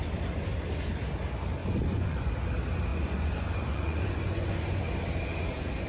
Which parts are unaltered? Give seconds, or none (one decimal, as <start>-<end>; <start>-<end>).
0.0-1.6; 2.3-2.9; 4.8-5.9